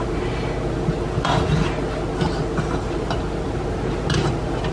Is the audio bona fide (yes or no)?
yes